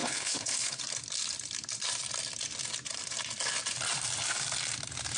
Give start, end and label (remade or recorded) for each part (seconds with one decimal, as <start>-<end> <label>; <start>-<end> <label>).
0.0-0.8 remade; 0.8-5.2 recorded